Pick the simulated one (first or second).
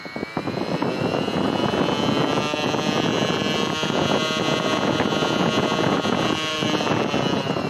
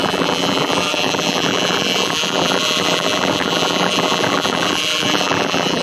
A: second